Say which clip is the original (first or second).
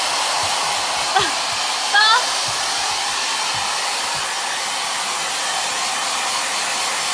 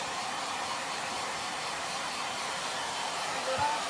first